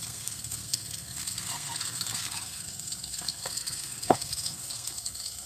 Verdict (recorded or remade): remade